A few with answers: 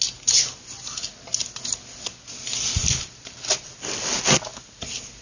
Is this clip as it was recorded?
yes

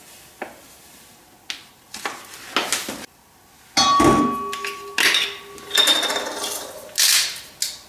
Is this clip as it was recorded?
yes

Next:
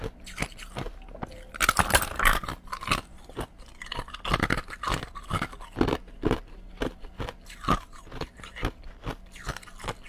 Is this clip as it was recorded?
yes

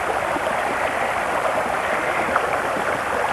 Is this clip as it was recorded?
yes